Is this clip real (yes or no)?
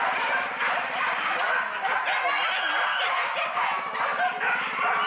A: yes